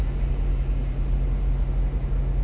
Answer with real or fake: real